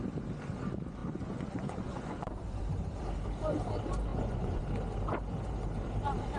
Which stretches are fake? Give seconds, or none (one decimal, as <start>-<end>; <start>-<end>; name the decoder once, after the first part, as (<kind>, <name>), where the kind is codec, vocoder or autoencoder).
1.0-2.6 (vocoder, Vocos); 4.1-4.6

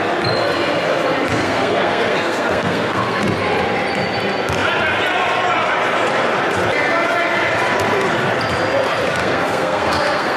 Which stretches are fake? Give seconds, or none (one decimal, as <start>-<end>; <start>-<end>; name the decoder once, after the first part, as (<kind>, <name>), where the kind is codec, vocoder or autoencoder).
1.4-3.2 (codec, SNAC); 9.2-10.4